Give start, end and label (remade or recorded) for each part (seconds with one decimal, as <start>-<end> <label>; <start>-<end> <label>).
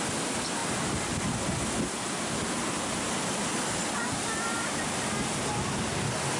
0.0-6.4 recorded